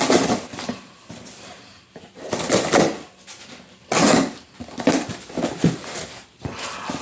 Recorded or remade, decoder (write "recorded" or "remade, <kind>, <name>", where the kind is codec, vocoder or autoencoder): recorded